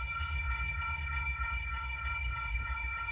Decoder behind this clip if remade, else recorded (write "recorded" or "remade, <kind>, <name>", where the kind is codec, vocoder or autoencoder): remade, codec, HILCodec